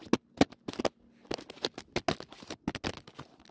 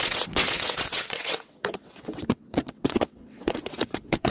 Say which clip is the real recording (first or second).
first